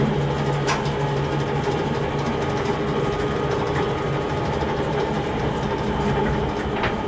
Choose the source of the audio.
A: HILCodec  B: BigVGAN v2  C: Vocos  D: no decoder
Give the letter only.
D